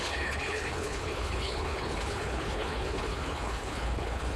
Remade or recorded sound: remade